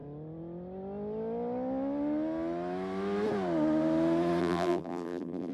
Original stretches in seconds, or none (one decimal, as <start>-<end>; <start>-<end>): 0.0-4.4